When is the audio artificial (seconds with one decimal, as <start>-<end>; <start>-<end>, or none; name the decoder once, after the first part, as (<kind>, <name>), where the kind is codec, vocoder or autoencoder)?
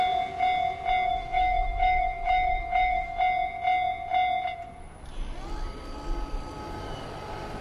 1.1-3.2 (autoencoder, DAC-VAE)